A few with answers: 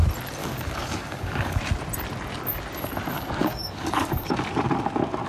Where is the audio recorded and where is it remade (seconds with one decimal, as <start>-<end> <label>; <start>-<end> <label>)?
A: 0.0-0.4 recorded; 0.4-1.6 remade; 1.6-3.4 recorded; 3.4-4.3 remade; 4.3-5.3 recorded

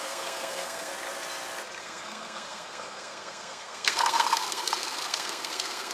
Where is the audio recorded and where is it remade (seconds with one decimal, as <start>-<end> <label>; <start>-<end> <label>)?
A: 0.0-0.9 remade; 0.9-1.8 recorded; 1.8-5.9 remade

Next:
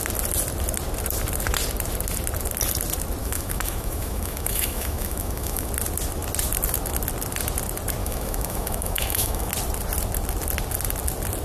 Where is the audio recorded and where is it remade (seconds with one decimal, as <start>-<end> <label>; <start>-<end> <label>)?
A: 0.0-3.2 recorded; 3.2-5.7 remade; 5.7-8.0 recorded; 8.0-9.5 remade; 9.5-11.4 recorded